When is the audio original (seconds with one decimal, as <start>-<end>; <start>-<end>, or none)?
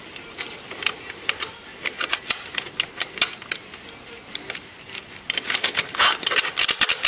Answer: 0.0-5.6; 6.2-7.1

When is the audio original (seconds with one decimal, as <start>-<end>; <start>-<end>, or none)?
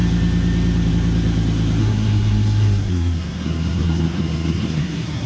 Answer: 0.0-1.8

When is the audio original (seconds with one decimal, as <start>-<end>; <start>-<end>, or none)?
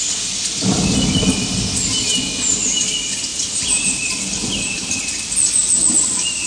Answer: 0.0-6.5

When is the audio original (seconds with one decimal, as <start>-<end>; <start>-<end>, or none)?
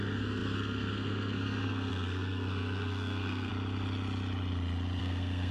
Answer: 3.5-5.0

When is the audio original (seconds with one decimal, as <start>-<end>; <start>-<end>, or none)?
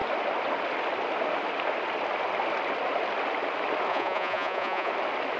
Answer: 0.0-3.9; 4.9-5.4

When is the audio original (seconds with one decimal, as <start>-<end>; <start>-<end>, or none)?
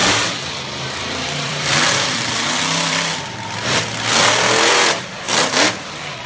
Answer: 3.8-6.3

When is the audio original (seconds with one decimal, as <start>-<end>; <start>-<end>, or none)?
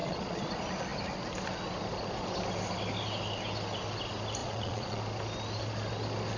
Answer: 0.5-4.4; 5.0-6.4